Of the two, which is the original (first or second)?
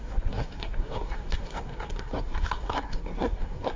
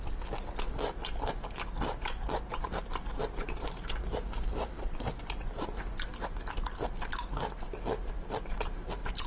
second